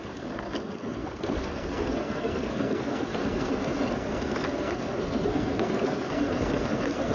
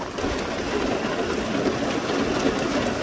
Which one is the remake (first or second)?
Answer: first